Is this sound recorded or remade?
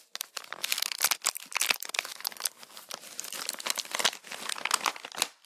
recorded